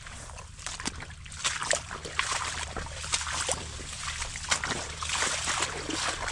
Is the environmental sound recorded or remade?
recorded